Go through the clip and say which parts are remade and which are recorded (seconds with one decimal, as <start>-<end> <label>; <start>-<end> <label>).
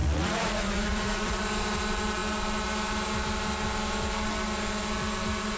0.0-1.4 remade; 1.4-5.6 recorded